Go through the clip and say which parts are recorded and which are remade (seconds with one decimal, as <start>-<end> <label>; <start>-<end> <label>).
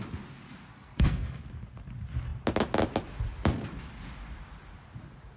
0.0-0.7 recorded; 0.7-1.4 remade; 1.4-5.4 recorded